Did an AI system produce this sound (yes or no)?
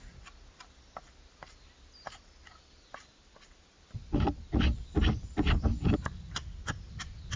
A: no